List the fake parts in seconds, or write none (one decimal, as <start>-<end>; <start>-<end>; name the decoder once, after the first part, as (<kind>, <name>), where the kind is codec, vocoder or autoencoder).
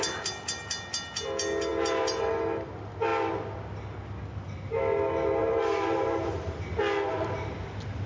5.4-6.6 (vocoder, BigVGAN v2)